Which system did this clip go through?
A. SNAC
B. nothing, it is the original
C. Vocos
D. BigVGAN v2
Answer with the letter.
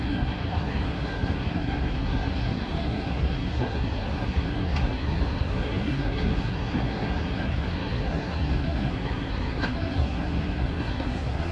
A